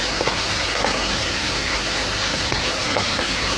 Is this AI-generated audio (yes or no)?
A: yes